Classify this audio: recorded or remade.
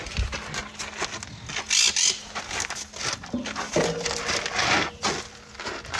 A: recorded